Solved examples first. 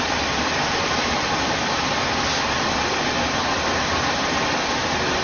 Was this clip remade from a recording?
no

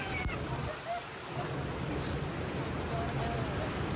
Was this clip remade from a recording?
no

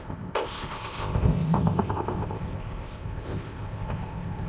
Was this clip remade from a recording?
yes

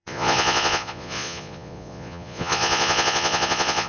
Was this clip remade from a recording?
yes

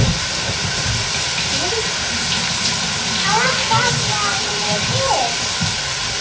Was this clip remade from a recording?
no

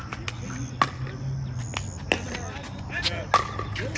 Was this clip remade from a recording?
no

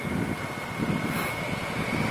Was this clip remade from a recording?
no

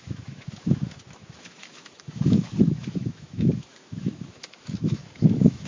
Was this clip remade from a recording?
yes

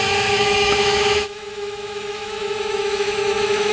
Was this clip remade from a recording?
yes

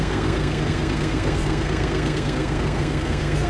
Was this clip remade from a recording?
yes